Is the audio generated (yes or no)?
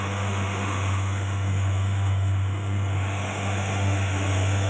yes